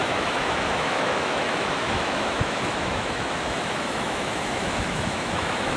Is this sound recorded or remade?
remade